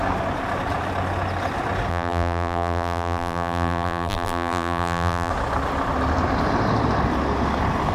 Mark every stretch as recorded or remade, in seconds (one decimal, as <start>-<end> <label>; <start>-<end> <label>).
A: 0.0-1.9 recorded; 1.9-5.3 remade; 5.3-7.9 recorded